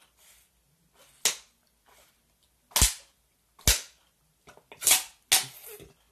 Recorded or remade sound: recorded